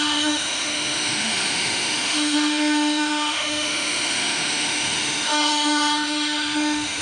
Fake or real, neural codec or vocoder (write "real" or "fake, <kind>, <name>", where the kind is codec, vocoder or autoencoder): fake, autoencoder, DAC-VAE